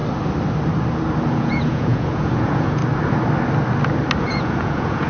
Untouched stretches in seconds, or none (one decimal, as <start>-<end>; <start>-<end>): 0.0-1.3; 2.8-4.2